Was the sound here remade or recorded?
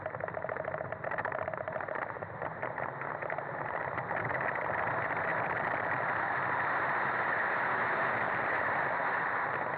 recorded